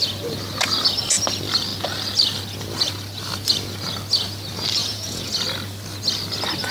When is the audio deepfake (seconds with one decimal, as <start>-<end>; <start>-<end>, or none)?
4.8-5.3